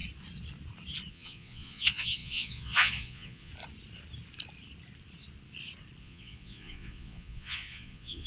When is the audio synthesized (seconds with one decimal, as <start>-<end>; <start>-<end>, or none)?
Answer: 1.1-3.5; 6.0-8.3